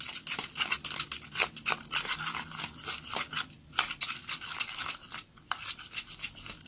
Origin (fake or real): real